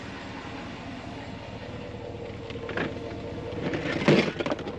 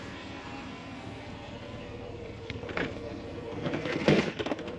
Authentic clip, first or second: first